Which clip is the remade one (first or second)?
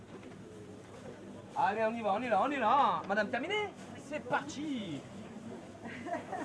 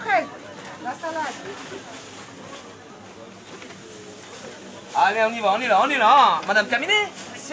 first